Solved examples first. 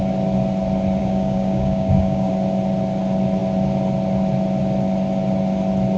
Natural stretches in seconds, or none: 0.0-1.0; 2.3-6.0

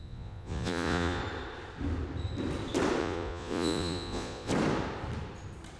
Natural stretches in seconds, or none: 1.2-3.0; 4.5-5.8

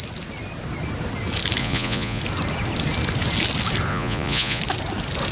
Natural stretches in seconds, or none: 0.0-1.6; 2.2-3.9; 4.6-5.3

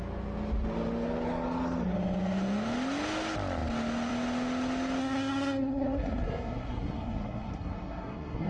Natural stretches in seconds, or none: 0.0-5.0

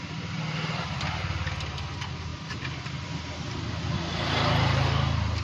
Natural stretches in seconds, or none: 0.0-5.4

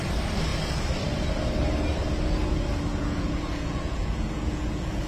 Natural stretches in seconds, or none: 0.0-2.9

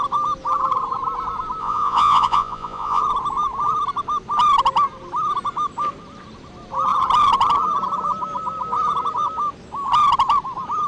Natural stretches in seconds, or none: 0.0-1.6; 3.0-10.9